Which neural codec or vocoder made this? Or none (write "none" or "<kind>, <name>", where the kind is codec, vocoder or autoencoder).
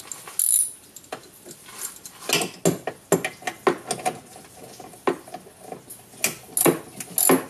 none